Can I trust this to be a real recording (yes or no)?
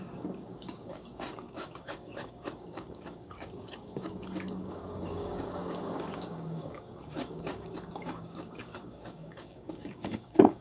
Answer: no